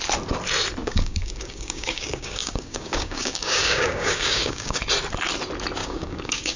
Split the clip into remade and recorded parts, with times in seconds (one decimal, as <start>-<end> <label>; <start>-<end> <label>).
0.0-0.8 recorded; 0.8-4.8 remade; 4.8-5.8 recorded; 5.8-6.6 remade